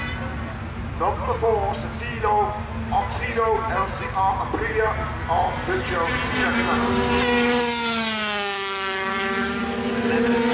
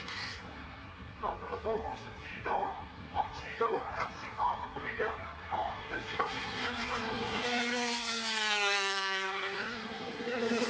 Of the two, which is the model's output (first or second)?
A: second